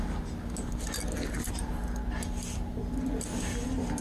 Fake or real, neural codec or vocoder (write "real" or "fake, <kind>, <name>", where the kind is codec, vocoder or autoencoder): real